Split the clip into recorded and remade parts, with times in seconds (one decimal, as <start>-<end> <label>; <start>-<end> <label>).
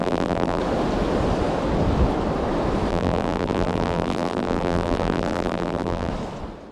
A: 0.0-0.6 remade; 0.6-2.9 recorded; 2.9-6.1 remade; 6.1-6.7 recorded